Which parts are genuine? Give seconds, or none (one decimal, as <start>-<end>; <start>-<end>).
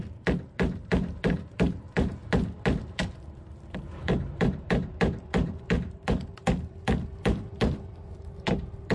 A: 2.2-2.8